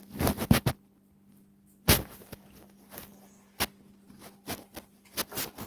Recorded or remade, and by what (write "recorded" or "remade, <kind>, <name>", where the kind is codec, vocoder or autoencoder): recorded